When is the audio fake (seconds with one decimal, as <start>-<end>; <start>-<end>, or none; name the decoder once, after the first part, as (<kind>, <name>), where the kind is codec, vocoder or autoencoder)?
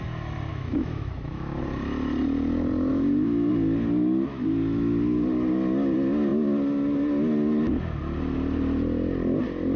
0.5-1.6 (autoencoder, DAC-VAE); 2.9-3.5